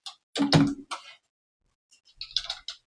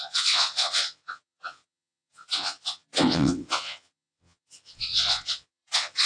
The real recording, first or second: first